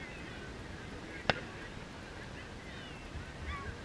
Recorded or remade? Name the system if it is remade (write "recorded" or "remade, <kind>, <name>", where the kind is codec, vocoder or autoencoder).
recorded